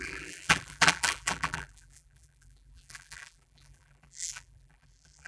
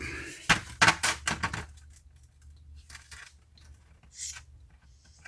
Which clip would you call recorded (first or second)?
second